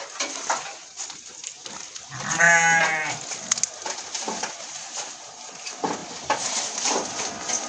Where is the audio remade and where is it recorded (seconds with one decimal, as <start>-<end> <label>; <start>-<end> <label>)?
0.0-7.7 recorded